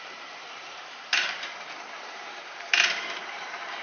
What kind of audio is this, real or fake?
fake